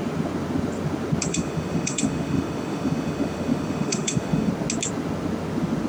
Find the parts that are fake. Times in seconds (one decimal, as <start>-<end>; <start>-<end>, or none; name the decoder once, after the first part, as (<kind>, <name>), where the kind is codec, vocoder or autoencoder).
1.3-4.5 (autoencoder, DAC-VAE)